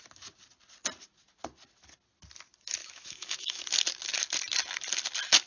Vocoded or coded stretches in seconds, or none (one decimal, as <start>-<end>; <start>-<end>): 2.8-3.6